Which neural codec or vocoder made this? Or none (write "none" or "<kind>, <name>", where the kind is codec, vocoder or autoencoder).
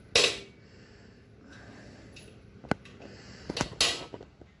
none